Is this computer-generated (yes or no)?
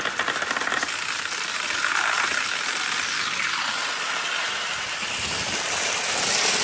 no